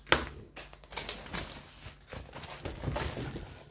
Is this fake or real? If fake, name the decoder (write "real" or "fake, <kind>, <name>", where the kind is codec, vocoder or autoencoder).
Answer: real